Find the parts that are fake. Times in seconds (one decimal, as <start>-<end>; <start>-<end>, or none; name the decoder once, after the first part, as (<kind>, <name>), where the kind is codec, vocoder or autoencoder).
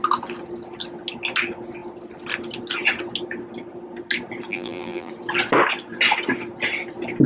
4.5-5.1 (vocoder, BigVGAN v2)